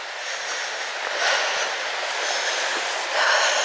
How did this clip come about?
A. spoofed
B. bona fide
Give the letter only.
B